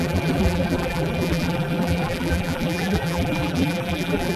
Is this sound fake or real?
fake